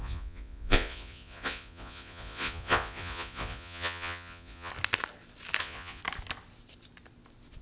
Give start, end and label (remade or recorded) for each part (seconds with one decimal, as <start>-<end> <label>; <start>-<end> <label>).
0.0-4.7 remade; 4.7-5.6 recorded; 5.6-6.0 remade; 6.0-7.6 recorded